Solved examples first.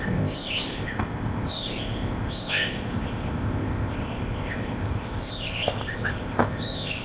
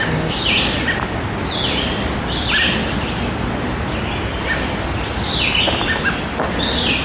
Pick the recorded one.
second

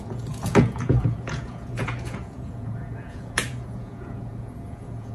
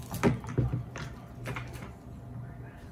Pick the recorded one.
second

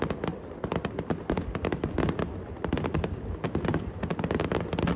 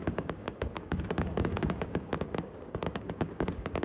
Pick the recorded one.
first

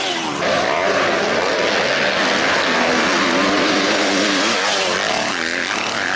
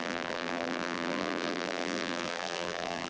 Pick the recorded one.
first